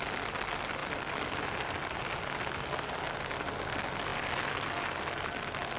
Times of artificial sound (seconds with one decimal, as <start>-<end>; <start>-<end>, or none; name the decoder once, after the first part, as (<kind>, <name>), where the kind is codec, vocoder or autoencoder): none